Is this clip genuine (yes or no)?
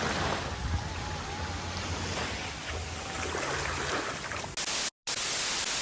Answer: yes